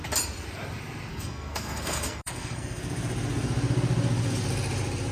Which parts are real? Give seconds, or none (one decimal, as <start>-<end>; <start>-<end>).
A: 0.0-1.1; 2.8-5.1